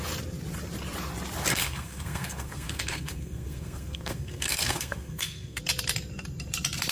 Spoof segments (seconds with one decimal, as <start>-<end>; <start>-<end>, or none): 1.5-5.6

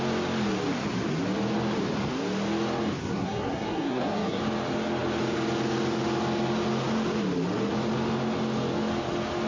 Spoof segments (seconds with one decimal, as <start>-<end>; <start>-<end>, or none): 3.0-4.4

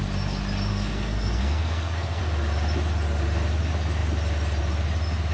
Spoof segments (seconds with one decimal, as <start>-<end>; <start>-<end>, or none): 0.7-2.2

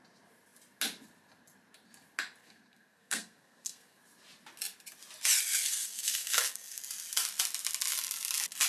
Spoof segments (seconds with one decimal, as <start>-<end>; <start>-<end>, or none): 2.4-4.0; 5.5-6.8

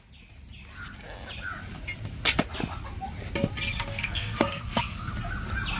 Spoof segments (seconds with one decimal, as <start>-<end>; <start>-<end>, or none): 3.7-5.1